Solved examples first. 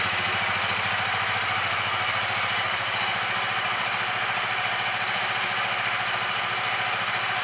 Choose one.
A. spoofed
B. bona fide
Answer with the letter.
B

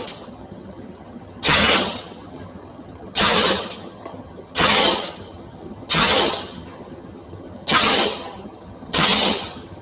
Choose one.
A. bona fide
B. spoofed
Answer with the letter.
B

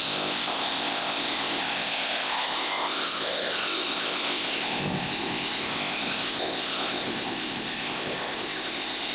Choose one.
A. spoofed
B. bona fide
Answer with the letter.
A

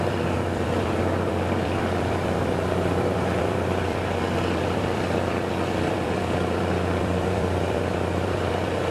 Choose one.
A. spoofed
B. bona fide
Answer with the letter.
A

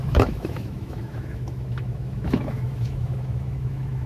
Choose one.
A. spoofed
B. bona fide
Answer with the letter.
A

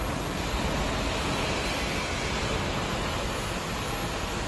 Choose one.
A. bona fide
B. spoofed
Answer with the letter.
A